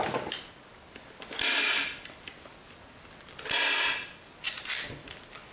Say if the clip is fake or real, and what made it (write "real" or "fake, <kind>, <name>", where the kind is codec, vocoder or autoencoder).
real